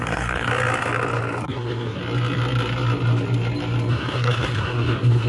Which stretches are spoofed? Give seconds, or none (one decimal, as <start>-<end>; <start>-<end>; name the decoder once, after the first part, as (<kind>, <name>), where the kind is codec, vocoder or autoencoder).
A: 0.0-0.5 (codec, SNAC); 1.4-2.0; 3.9-5.3